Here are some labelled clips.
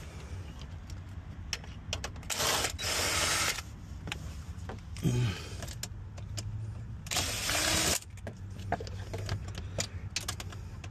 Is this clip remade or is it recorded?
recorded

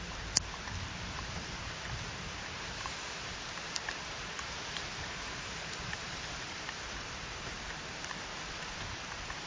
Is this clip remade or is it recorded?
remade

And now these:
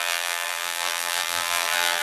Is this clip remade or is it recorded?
remade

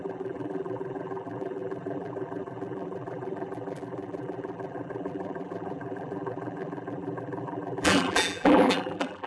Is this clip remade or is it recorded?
remade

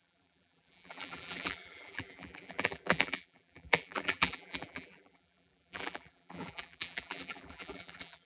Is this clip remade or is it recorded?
remade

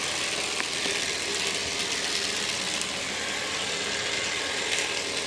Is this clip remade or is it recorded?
recorded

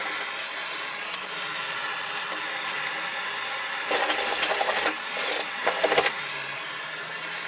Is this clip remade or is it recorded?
recorded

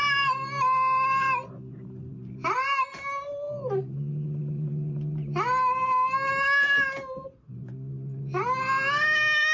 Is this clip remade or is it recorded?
recorded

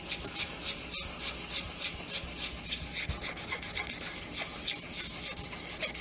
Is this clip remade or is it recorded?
recorded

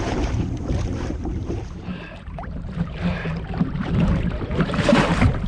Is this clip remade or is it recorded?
remade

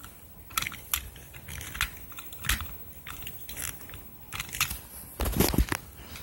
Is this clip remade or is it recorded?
recorded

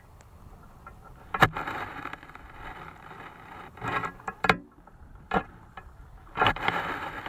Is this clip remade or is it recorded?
remade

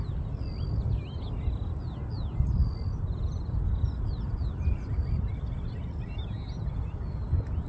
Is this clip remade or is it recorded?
recorded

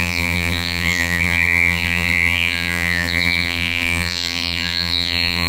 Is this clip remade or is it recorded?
remade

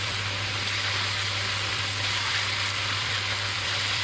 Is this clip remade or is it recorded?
remade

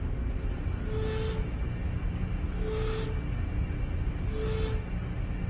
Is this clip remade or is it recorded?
recorded